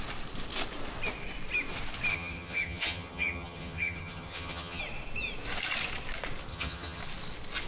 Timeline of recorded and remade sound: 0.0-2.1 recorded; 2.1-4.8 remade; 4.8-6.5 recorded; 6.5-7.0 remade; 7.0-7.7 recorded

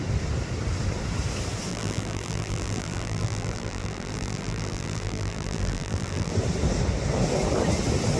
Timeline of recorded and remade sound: 0.0-1.7 recorded; 1.7-6.3 remade; 6.3-8.2 recorded

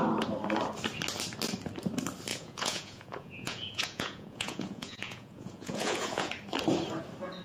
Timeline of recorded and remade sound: 0.0-2.3 recorded; 2.3-6.3 remade; 6.3-7.4 recorded

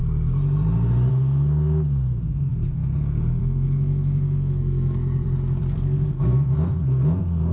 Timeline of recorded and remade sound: 0.0-1.1 recorded; 1.1-5.0 remade; 5.0-5.7 recorded; 5.7-7.5 remade

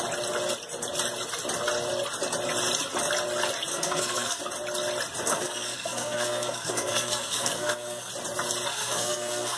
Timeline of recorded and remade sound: 0.0-3.7 recorded; 3.7-4.4 remade; 4.4-5.3 recorded; 5.3-8.1 remade; 8.1-8.7 recorded; 8.7-9.6 remade

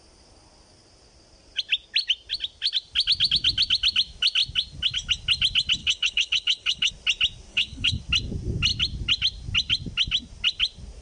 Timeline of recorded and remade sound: 0.0-5.8 recorded; 5.8-6.9 remade; 6.9-7.5 recorded; 7.5-8.0 remade; 8.0-11.0 recorded

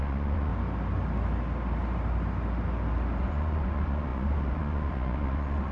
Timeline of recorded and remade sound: 0.0-0.5 remade; 0.5-3.2 recorded; 3.2-5.7 remade

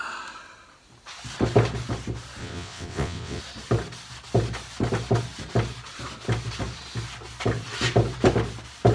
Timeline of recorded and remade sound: 0.0-2.4 recorded; 2.4-3.4 remade; 3.4-8.9 recorded